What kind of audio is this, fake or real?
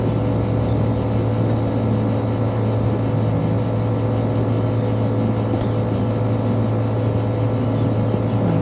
real